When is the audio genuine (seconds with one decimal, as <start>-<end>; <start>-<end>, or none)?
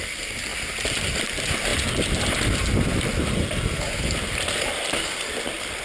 none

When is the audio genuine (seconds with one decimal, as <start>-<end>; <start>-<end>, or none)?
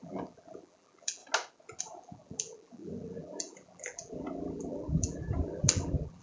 1.2-1.8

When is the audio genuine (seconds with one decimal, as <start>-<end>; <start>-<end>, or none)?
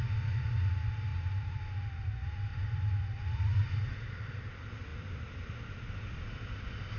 0.0-1.1; 1.6-2.5; 3.0-4.9; 5.6-7.0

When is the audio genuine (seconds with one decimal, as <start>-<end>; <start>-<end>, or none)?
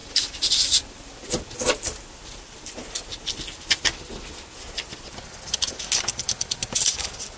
0.0-6.6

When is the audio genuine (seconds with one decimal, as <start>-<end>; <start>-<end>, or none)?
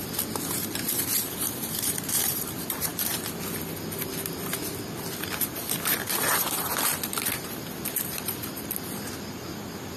0.0-0.7; 2.9-5.0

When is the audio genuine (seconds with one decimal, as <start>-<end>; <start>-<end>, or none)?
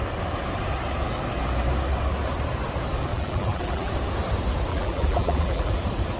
0.0-3.1; 3.9-4.7; 5.7-6.2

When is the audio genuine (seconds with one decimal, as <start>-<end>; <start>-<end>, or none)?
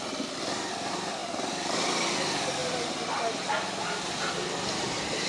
0.0-5.3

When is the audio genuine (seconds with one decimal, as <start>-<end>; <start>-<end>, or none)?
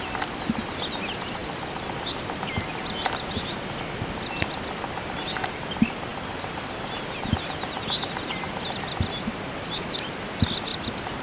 0.0-11.2